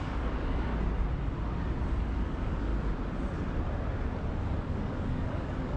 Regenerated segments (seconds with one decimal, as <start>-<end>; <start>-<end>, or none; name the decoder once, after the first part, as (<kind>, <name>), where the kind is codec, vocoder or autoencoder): 0.0-0.7 (codec, DAC); 2.0-2.7; 4.6-5.8